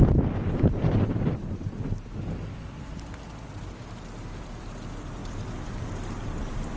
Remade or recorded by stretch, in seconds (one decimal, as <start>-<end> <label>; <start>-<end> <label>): 0.0-1.4 remade; 1.4-4.4 recorded; 4.4-6.8 remade